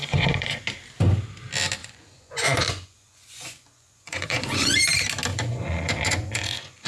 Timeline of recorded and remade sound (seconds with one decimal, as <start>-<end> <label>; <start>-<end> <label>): 0.0-0.6 remade; 0.6-1.8 recorded; 1.8-4.8 remade; 4.8-5.3 recorded; 5.3-6.9 remade